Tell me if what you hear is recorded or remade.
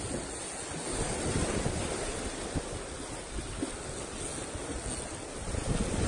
recorded